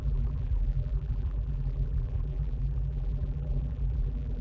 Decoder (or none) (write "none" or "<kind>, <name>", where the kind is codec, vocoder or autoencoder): vocoder, BigVGAN v2